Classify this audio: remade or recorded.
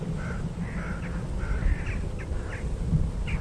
recorded